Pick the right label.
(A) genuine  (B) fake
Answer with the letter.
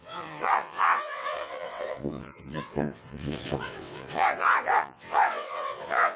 B